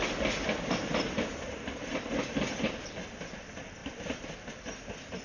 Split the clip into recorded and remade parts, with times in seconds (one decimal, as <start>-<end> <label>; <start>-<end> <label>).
0.0-5.2 recorded